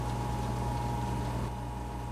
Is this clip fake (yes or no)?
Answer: no